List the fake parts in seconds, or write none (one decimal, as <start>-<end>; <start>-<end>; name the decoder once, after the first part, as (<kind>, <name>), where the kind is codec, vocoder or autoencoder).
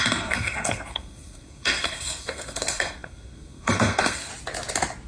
0.0-4.3 (codec, SNAC)